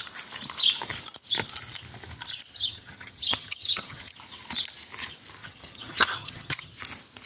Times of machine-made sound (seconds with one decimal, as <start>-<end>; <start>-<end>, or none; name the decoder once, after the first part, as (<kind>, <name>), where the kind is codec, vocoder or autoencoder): 2.5-4.2 (vocoder, HiFi-GAN); 5.4-6.7

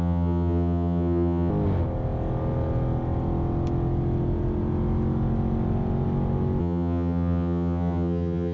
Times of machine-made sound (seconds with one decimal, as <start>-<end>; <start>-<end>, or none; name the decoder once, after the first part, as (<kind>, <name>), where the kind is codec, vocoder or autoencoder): 0.0-1.5 (vocoder, HiFi-GAN); 6.6-8.5

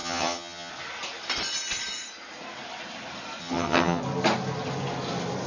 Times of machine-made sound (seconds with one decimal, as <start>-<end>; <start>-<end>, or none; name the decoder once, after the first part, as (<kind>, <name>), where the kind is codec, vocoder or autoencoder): 0.0-0.7 (vocoder, HiFi-GAN); 3.4-4.0